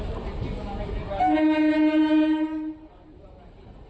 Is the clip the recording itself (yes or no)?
no